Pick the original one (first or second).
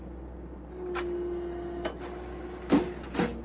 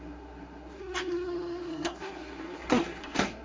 first